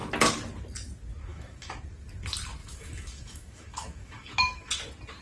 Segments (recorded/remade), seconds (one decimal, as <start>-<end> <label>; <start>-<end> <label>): 0.0-1.3 recorded; 1.3-1.8 remade; 1.8-2.6 recorded; 2.6-4.7 remade; 4.7-5.2 recorded

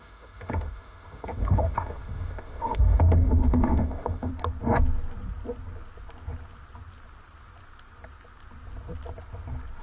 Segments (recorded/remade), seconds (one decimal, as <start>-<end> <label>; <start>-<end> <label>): 0.0-4.3 remade; 4.3-9.8 recorded

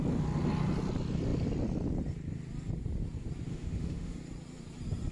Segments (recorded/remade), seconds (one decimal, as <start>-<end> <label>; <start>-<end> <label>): 0.0-3.5 recorded; 3.5-4.2 remade; 4.2-5.1 recorded

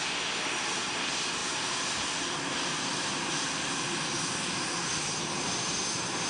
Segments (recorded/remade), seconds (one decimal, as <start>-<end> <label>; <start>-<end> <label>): 0.0-6.3 recorded

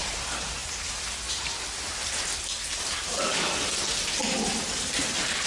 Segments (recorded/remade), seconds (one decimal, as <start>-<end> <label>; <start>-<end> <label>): 0.0-5.5 recorded

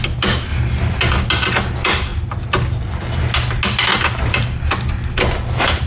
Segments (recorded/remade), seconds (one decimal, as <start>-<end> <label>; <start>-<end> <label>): 0.0-5.9 recorded

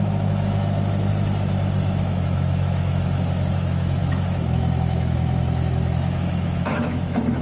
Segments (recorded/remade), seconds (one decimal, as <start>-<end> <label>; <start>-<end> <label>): 0.0-1.1 remade; 1.1-2.0 recorded; 2.0-7.4 remade

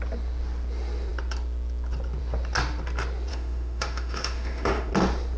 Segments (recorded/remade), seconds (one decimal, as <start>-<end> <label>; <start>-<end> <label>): 0.0-3.3 recorded; 3.3-4.9 remade; 4.9-5.4 recorded